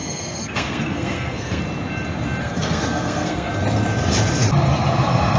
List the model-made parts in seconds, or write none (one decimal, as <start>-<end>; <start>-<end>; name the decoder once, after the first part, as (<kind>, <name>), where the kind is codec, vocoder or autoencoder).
0.0-1.6 (codec, SNAC); 2.4-3.5